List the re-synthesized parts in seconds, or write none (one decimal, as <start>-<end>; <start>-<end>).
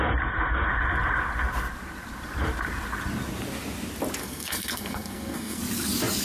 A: 4.2-5.6